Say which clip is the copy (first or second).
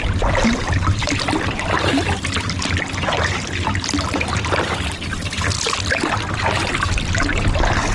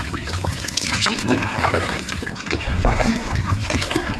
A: second